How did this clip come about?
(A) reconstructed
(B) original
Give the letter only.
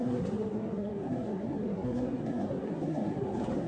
A